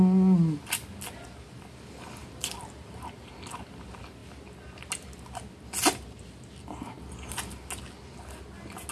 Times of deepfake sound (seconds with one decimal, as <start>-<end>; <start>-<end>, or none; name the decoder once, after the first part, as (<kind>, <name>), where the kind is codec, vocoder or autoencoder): none